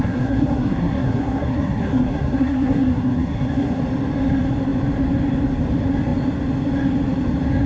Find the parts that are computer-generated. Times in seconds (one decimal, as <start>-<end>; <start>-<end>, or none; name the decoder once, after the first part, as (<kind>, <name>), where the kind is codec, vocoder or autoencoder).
0.0-3.8 (codec, SNAC)

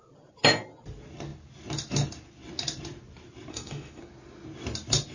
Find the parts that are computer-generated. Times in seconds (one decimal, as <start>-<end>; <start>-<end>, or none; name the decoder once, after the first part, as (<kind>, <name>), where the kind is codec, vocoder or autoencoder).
3.5-4.0 (autoencoder, DAC-VAE)

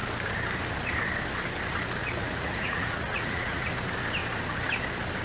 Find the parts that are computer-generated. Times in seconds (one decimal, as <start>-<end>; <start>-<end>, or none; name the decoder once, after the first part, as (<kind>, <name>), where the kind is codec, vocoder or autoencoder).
2.0-3.7 (vocoder, Vocos)

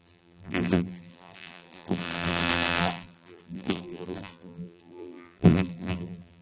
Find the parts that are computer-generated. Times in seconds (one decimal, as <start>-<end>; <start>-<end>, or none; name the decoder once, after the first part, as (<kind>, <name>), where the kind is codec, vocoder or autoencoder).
0.0-6.4 (vocoder, BigVGAN v2)

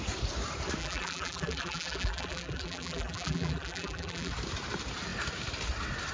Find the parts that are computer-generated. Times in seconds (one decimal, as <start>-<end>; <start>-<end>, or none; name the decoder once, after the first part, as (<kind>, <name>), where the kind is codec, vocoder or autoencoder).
0.8-4.3 (vocoder, BigVGAN v2)